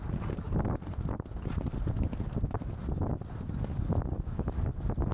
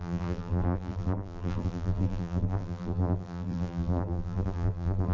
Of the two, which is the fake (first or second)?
second